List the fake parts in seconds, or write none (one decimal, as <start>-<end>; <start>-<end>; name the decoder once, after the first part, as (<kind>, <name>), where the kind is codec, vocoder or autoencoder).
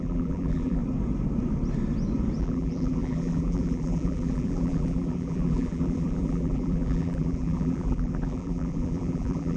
0.0-0.8 (vocoder, BigVGAN v2); 2.4-9.6